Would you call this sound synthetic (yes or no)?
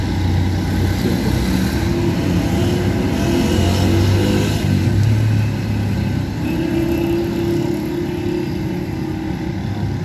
no